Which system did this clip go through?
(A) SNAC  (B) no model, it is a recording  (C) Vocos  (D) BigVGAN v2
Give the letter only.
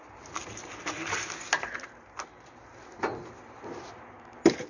B